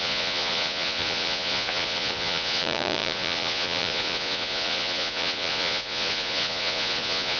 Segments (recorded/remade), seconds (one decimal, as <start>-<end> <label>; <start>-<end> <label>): 0.0-7.4 remade